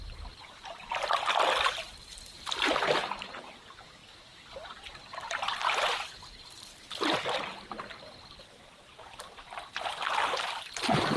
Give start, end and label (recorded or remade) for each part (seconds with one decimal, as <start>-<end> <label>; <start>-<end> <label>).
0.0-11.2 recorded